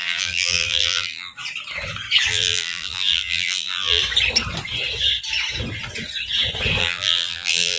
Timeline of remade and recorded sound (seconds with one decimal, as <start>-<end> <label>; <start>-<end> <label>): 0.0-1.3 remade; 1.3-2.3 recorded; 2.3-4.0 remade; 4.0-6.8 recorded; 6.8-7.8 remade